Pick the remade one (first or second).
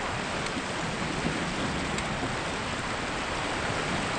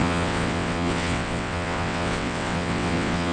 second